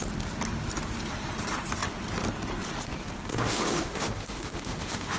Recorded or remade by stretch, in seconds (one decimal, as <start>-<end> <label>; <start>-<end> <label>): 0.0-3.3 recorded; 3.3-5.2 remade